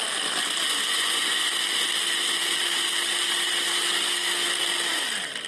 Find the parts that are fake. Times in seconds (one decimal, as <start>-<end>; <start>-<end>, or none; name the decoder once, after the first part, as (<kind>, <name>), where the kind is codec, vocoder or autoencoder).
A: 0.9-1.5 (vocoder, Vocos)